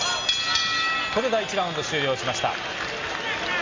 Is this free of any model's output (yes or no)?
yes